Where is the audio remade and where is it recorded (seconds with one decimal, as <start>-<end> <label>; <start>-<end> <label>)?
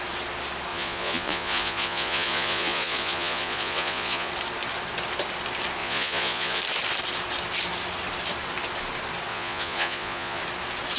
0.0-0.7 recorded; 0.7-4.3 remade; 4.3-5.8 recorded; 5.8-6.6 remade; 6.6-9.3 recorded; 9.3-10.4 remade; 10.4-11.0 recorded